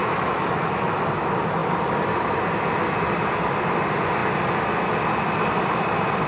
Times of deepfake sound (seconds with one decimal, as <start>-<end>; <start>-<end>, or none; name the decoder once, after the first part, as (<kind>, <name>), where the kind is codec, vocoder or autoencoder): 0.0-1.0 (autoencoder, DAC-VAE)